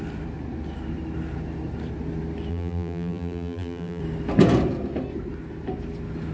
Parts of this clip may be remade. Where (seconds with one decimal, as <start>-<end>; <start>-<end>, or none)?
2.5-4.0